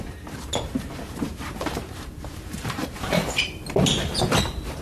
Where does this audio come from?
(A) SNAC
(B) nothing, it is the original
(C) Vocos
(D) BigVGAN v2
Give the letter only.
D